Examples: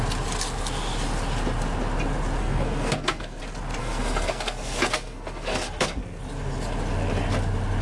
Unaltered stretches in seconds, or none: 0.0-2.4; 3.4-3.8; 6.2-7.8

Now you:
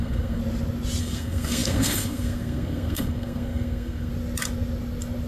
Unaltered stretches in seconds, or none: 0.4-1.0; 4.1-5.3

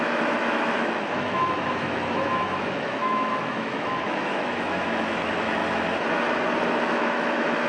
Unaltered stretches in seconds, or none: 5.6-6.8

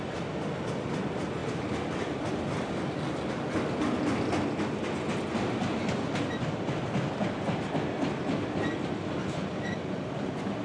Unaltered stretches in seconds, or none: 0.0-10.6

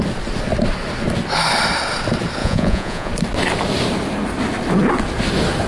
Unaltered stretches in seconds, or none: 0.0-2.4; 3.1-5.7

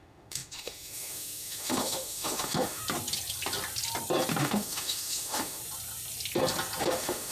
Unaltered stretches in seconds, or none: 2.8-4.4; 5.6-6.8

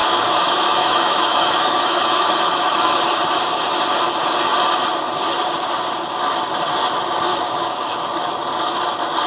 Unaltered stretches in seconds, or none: 3.0-7.3; 8.0-9.3